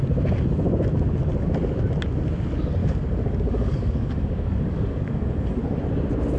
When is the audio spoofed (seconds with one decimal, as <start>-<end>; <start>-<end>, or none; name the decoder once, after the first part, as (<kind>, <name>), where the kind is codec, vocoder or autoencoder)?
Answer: 2.8-5.8 (codec, DAC)